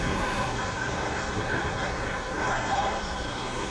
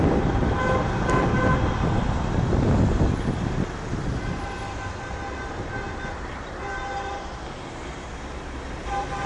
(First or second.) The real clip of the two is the second